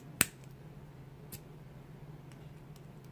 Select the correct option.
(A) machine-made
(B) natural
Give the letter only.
B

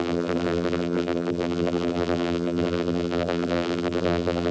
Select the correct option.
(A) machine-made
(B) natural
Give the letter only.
A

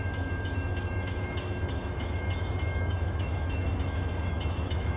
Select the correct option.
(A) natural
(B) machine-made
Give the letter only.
B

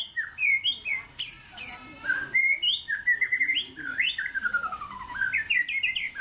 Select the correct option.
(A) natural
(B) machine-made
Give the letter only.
A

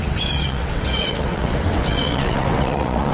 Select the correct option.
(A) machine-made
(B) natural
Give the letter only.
A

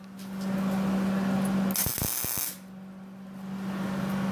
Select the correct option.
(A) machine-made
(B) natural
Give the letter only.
B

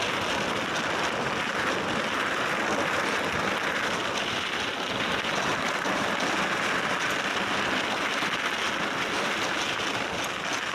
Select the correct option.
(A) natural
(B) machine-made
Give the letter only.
A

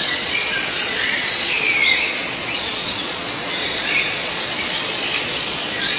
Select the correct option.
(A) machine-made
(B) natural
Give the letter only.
A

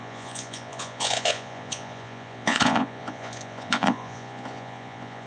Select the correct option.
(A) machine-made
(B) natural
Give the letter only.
A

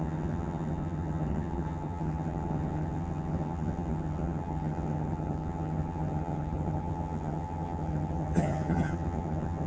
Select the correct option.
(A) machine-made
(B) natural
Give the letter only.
A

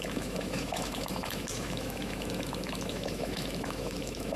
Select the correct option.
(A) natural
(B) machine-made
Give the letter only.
B